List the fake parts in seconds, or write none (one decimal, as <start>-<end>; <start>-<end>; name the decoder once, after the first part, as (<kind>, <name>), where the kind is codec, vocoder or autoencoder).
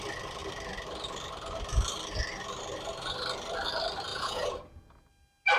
4.1-5.1 (vocoder, Vocos)